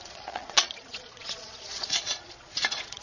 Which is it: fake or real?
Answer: fake